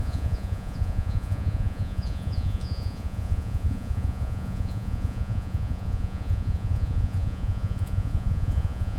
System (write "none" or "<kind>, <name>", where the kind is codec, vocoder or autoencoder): vocoder, Vocos